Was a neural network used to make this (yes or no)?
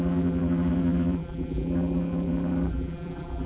yes